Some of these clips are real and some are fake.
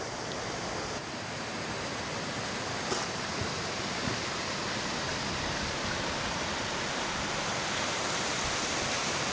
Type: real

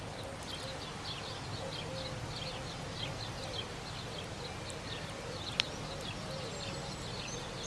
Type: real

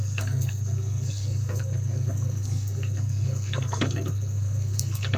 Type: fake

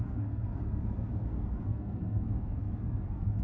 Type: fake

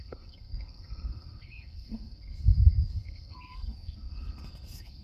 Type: fake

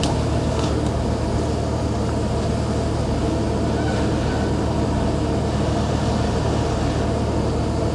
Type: real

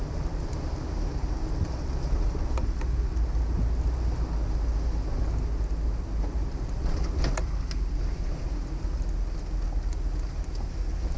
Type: real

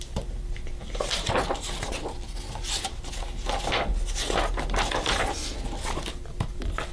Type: real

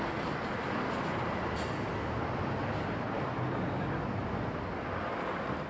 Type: real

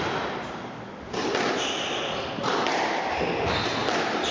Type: real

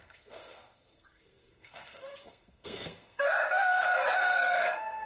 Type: fake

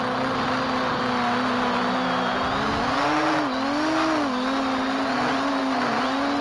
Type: real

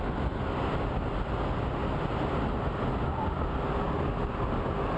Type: real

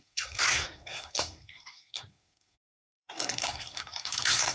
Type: fake